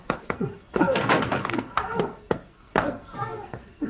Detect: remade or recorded remade